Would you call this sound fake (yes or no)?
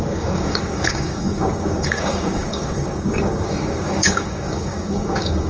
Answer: yes